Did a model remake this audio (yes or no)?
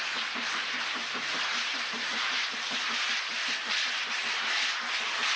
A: yes